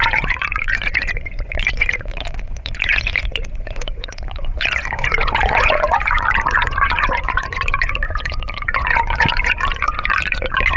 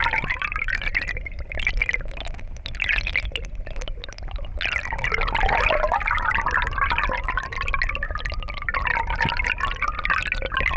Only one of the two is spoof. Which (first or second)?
first